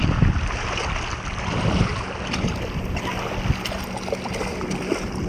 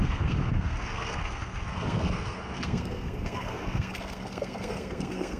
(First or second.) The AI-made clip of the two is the second